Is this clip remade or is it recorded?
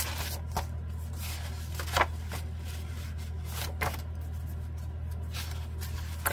recorded